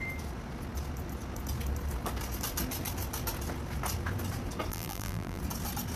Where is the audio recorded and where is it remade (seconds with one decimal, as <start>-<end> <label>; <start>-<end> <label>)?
0.0-4.7 recorded; 4.7-5.4 remade; 5.4-6.0 recorded